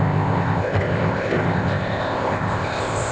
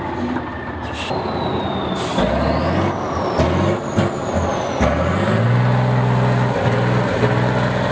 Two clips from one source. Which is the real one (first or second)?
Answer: second